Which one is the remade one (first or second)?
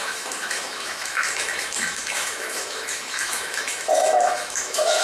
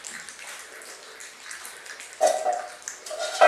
first